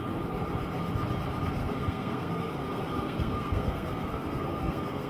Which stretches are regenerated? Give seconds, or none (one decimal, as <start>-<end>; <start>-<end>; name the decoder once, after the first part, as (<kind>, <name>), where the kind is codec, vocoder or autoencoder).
1.6-5.1 (codec, SNAC)